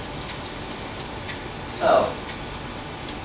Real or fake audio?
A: real